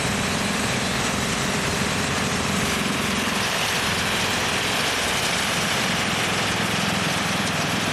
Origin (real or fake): fake